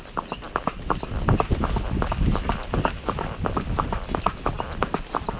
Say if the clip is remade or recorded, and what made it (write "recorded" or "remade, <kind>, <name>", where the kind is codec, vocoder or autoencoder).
recorded